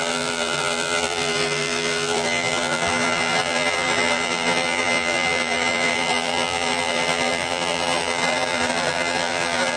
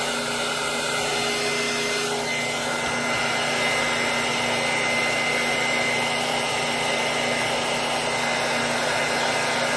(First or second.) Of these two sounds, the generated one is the first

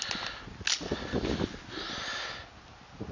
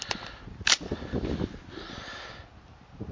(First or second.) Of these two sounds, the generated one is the second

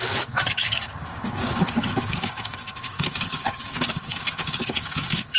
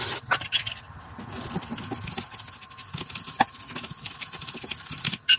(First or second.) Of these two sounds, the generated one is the first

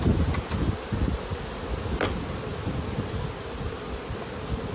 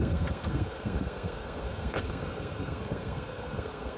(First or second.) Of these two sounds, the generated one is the second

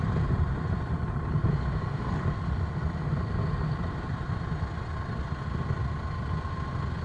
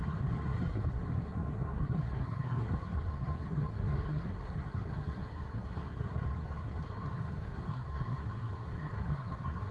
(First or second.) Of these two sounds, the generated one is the second